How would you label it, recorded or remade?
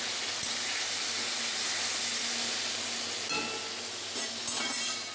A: recorded